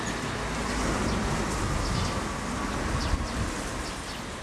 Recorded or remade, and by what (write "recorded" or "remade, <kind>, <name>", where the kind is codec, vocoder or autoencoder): recorded